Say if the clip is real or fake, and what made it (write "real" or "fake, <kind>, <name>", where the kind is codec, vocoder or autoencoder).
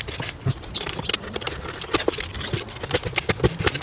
real